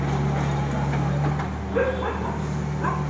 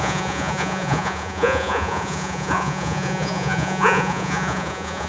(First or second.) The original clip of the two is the first